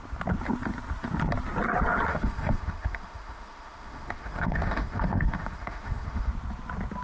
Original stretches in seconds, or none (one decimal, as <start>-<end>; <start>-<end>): 0.0-2.1; 6.3-7.0